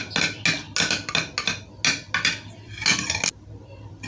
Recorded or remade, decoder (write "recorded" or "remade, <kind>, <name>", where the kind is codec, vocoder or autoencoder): recorded